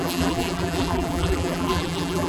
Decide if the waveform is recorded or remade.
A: remade